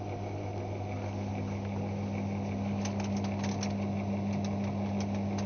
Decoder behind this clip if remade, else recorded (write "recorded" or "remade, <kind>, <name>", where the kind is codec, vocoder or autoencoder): recorded